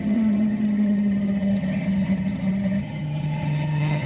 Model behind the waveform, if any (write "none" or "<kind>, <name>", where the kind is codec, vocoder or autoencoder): vocoder, HiFi-GAN